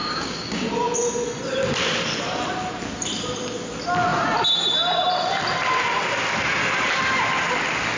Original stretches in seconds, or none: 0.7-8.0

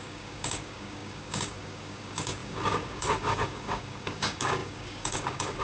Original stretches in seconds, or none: none

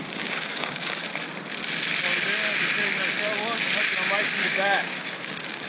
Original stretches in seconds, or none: 1.0-4.4

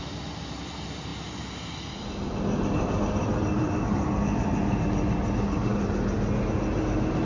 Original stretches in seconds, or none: 0.0-7.2

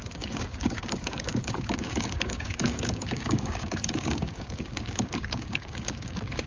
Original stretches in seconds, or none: none